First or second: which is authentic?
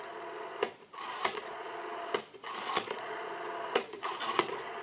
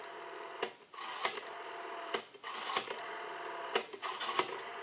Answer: second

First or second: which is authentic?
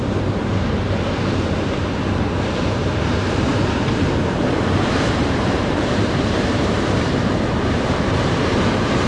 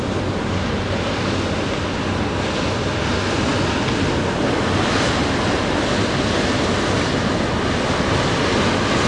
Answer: second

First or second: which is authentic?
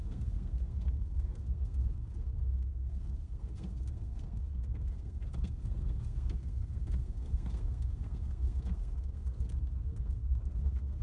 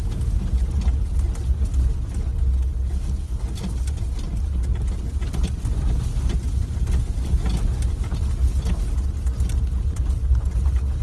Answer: second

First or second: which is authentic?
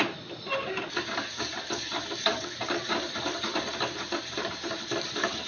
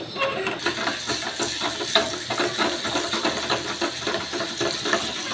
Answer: second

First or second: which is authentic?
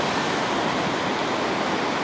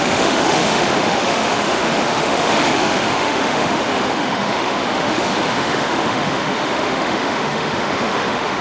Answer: first